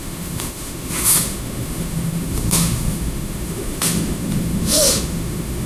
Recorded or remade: remade